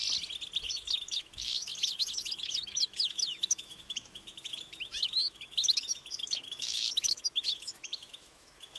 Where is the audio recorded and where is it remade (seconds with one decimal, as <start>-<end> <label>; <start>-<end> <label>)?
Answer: 0.0-0.6 recorded; 0.6-8.8 remade